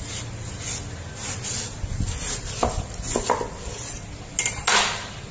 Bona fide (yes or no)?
yes